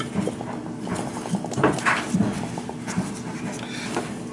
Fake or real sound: real